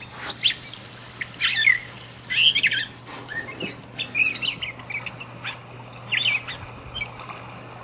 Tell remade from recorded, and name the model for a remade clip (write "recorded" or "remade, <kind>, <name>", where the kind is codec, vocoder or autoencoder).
recorded